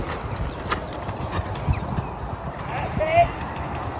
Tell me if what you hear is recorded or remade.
recorded